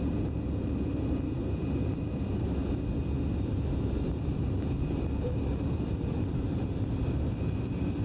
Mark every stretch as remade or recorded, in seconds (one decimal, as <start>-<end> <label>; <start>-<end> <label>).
0.0-2.6 remade; 2.6-3.3 recorded; 3.3-8.0 remade